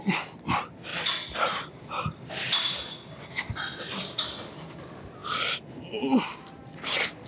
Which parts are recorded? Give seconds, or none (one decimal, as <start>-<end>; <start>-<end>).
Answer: 0.0-7.3